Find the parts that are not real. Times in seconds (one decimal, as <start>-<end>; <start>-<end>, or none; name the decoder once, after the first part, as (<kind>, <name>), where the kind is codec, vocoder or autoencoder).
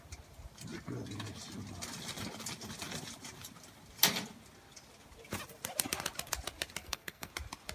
6.8-7.3 (codec, SNAC)